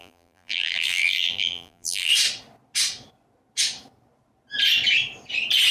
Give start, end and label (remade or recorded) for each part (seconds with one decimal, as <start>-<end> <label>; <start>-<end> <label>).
0.0-2.1 remade; 2.1-5.7 recorded